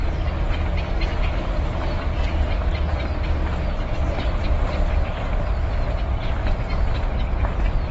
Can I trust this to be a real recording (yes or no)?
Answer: yes